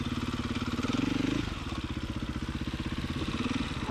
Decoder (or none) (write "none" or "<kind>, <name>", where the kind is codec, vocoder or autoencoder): none